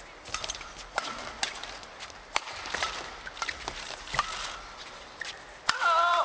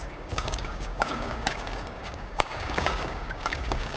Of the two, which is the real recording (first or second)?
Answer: first